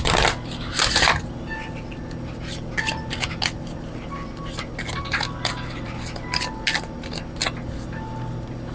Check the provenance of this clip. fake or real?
real